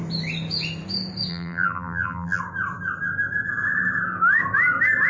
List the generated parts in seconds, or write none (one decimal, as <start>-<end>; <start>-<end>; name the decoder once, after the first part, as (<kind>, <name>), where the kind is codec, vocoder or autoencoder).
1.3-2.4 (vocoder, BigVGAN v2)